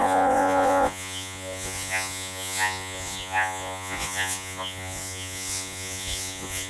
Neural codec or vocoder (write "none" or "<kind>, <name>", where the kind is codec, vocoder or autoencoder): vocoder, Vocos